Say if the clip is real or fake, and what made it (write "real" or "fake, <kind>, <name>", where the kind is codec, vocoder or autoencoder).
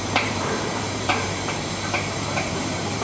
fake, vocoder, BigVGAN v2